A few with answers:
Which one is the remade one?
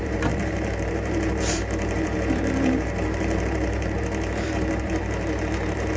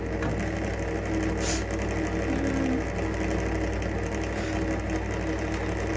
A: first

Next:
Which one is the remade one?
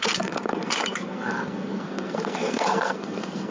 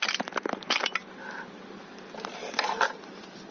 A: first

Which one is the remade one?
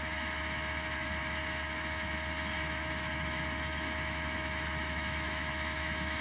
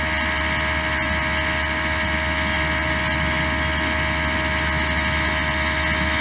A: first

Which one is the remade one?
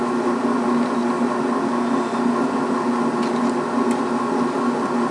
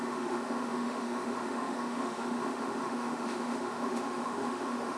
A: second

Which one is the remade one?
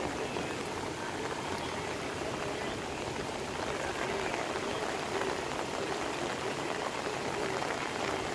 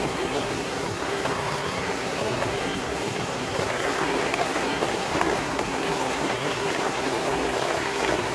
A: second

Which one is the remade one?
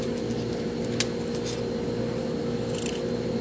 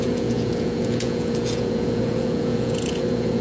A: second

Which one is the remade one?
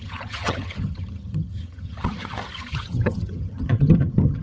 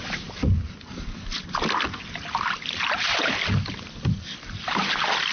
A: first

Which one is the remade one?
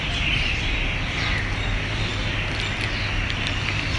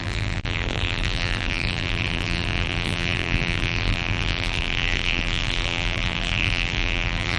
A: second